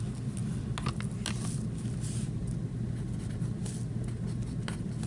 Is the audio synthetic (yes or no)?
no